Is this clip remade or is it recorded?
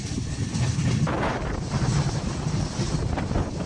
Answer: remade